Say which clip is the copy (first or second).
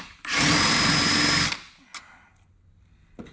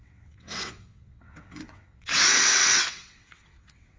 second